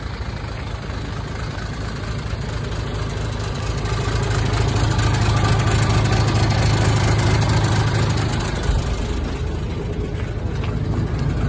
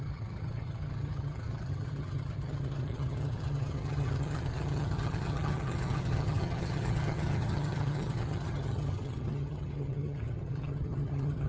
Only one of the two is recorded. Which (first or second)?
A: first